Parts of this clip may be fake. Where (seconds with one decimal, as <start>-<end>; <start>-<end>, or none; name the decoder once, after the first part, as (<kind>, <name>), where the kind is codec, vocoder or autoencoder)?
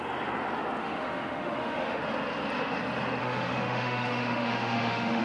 0.8-2.0 (autoencoder, DAC-VAE); 3.2-5.2